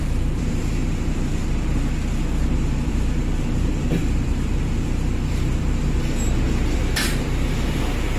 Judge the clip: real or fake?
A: fake